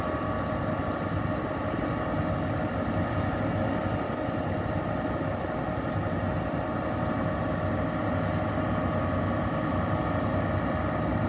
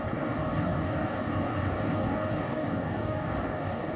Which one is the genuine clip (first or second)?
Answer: first